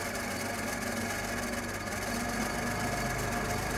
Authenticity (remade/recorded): recorded